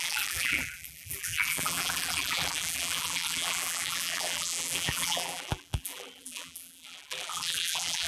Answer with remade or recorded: remade